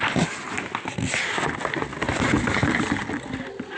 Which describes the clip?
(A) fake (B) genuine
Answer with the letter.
B